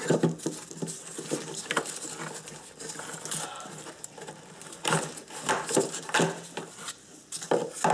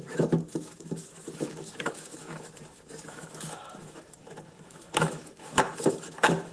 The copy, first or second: second